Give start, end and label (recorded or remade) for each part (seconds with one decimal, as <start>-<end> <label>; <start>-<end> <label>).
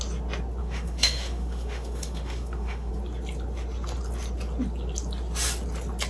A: 0.0-0.6 recorded; 0.6-2.9 remade; 2.9-6.1 recorded